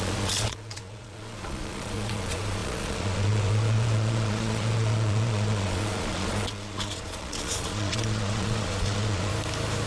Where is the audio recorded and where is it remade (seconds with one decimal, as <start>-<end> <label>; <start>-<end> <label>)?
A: 0.0-9.3 remade; 9.3-9.9 recorded